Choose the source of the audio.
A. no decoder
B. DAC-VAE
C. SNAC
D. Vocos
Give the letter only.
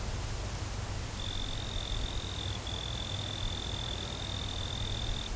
A